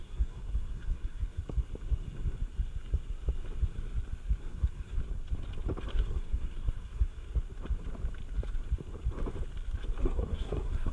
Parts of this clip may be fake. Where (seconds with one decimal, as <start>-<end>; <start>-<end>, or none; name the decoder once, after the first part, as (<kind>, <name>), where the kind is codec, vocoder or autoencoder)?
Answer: 0.0-1.4 (codec, SNAC); 4.4-5.0; 5.9-7.3; 10.0-10.9